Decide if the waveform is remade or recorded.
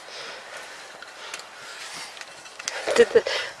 recorded